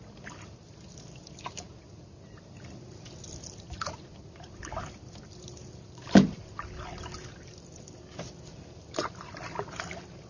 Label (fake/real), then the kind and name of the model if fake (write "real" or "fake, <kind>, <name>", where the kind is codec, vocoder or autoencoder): real